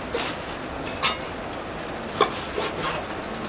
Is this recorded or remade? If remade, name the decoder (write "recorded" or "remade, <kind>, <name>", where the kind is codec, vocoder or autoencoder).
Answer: recorded